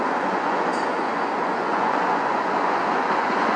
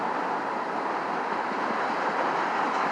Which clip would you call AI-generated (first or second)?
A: first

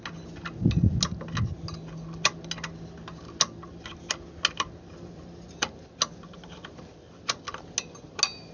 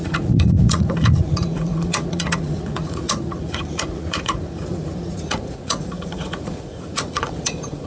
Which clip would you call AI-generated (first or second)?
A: second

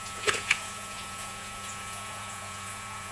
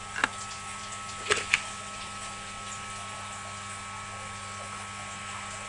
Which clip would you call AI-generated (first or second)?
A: first